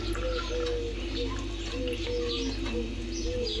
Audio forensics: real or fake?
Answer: real